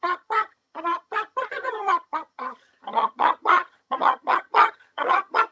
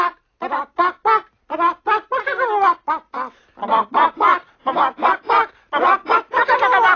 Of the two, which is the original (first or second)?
second